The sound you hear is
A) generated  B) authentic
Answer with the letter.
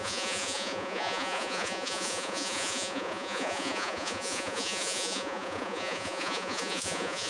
A